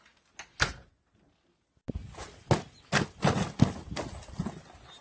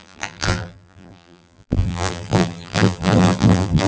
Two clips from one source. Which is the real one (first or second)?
first